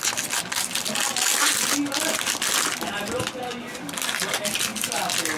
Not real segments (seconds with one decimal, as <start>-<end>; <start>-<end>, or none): none